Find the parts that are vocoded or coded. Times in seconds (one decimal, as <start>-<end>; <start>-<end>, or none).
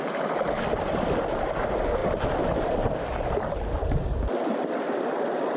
none